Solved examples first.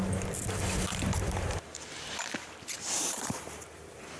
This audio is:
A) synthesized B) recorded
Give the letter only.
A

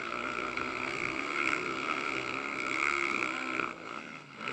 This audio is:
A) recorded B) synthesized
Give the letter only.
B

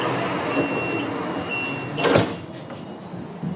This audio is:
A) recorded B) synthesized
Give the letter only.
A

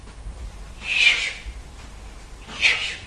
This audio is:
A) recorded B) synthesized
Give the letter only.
A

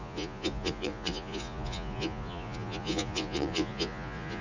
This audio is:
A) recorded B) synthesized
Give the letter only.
B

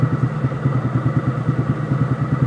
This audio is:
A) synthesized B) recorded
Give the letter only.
B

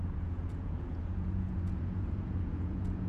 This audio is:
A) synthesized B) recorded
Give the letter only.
A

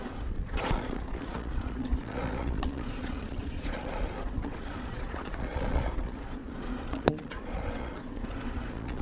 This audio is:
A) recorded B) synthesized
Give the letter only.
B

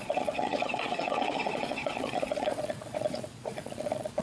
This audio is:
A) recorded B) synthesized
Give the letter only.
B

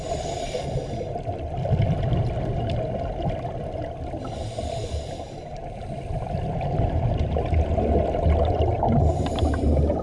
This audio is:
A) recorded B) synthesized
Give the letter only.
A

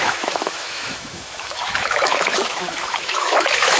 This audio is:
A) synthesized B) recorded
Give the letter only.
A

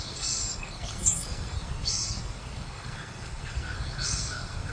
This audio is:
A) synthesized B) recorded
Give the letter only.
A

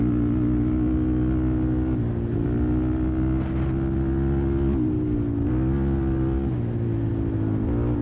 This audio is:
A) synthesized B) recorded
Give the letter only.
B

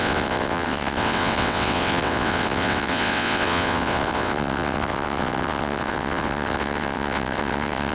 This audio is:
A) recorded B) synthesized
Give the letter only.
B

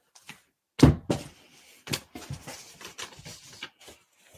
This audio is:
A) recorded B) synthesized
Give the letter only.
A